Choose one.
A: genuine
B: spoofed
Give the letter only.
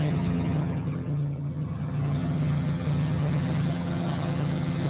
B